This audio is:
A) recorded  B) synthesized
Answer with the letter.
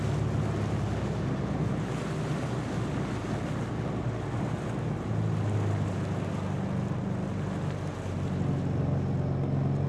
A